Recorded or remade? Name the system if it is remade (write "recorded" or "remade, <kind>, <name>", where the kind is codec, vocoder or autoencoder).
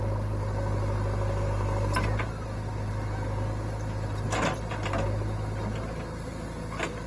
recorded